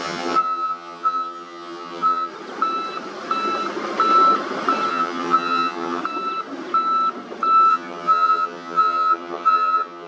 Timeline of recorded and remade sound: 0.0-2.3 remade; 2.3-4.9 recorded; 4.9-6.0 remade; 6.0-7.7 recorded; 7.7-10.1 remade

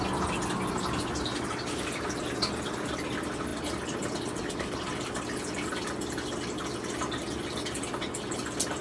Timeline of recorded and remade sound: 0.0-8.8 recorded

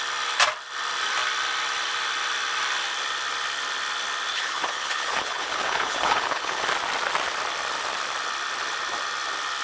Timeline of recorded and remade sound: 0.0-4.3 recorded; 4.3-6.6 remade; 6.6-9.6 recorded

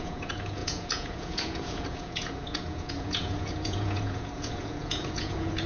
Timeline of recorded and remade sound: 0.0-5.7 remade